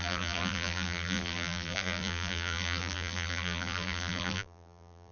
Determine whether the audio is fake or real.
fake